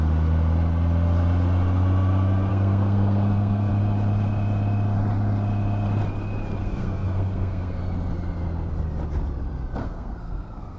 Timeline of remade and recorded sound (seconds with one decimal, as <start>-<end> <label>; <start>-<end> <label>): 0.0-2.5 recorded; 2.5-3.7 remade; 3.7-6.6 recorded; 6.6-7.8 remade; 7.8-9.8 recorded; 9.8-10.8 remade